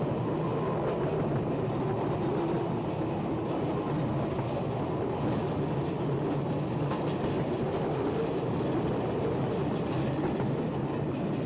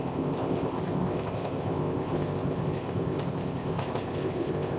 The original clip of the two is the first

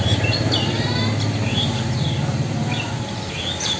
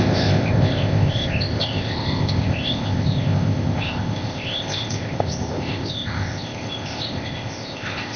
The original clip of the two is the first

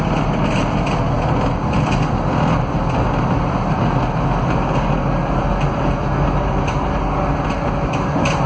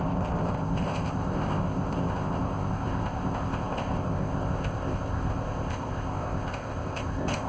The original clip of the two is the first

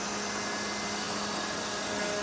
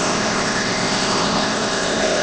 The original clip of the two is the first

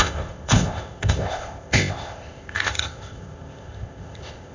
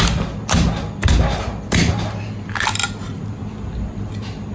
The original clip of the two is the second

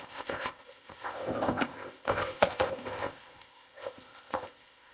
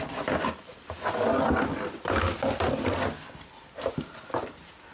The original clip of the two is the second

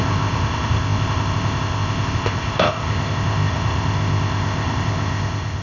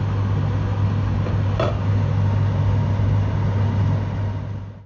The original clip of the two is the second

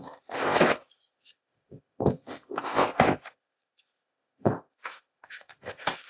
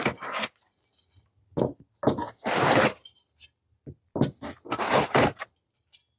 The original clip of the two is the second